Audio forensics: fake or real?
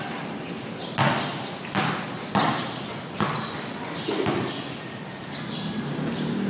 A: real